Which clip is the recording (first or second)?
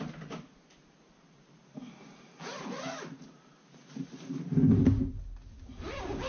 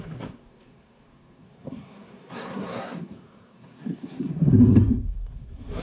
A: first